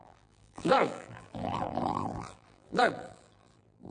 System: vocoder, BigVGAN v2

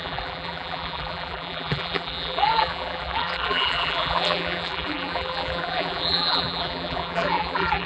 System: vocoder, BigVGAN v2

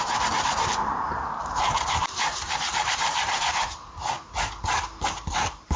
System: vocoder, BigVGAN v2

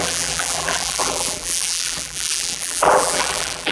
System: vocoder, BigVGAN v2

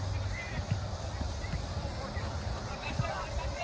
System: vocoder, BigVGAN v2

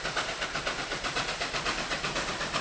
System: none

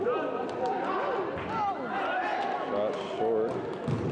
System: none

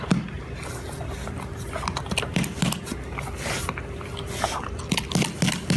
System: none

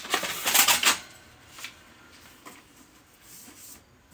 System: vocoder, BigVGAN v2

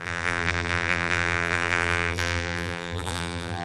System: vocoder, BigVGAN v2